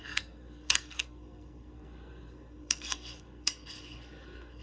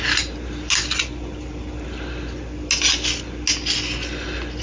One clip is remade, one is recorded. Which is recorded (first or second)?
second